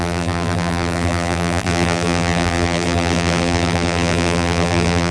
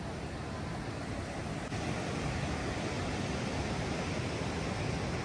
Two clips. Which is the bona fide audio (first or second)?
second